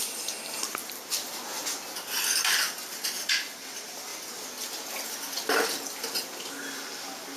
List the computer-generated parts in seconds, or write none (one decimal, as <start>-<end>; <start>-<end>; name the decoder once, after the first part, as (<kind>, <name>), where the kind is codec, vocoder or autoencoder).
0.8-1.5 (vocoder, BigVGAN v2); 4.1-4.8